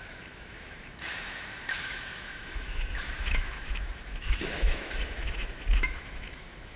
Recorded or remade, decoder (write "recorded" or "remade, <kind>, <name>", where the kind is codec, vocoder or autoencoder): remade, autoencoder, DAC-VAE